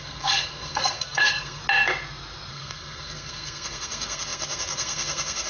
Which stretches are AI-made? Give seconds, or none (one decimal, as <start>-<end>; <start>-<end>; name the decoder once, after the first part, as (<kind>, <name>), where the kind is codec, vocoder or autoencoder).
0.0-1.6 (codec, SNAC); 2.5-5.5